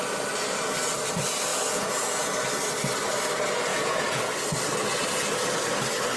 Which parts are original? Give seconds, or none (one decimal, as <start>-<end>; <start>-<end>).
0.0-1.5; 2.3-3.7; 4.2-6.2